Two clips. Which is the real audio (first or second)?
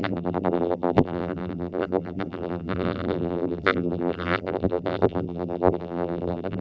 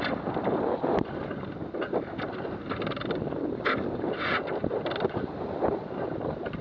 second